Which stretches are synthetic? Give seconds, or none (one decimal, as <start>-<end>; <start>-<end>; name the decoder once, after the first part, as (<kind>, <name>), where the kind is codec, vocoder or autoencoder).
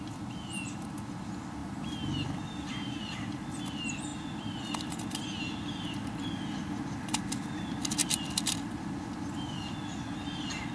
1.6-3.6 (vocoder, BigVGAN v2); 8.0-8.7